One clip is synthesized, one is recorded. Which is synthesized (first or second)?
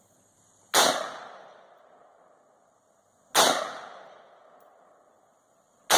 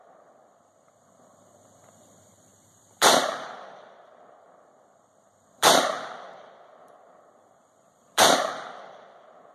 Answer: second